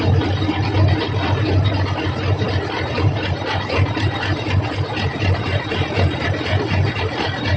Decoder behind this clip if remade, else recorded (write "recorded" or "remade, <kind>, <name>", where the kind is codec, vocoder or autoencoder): recorded